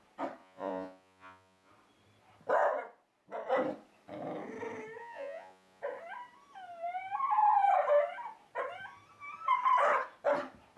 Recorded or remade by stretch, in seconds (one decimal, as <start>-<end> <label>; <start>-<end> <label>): 0.0-0.4 recorded; 0.4-1.7 remade; 1.7-5.0 recorded; 5.0-5.8 remade; 5.8-10.8 recorded